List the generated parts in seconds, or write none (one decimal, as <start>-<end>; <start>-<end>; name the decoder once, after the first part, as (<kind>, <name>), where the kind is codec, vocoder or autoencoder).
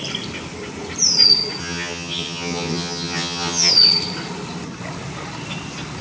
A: 1.6-3.7 (vocoder, HiFi-GAN)